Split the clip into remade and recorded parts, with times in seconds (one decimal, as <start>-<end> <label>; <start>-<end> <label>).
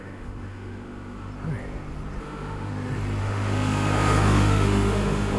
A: 0.0-1.3 remade; 1.3-2.2 recorded; 2.2-2.7 remade; 2.7-3.2 recorded; 3.2-5.4 remade